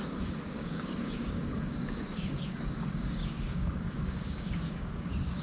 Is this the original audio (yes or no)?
no